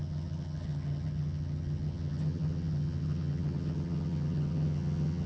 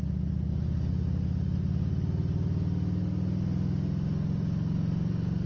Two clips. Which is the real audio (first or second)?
second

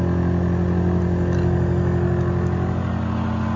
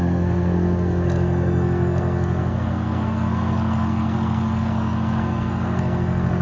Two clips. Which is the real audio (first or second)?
first